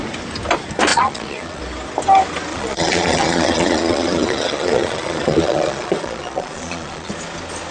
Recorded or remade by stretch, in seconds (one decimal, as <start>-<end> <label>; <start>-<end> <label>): 0.0-0.9 recorded; 0.9-1.6 remade; 1.6-2.5 recorded; 2.5-7.1 remade; 7.1-7.7 recorded